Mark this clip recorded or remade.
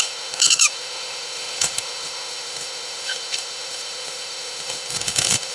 remade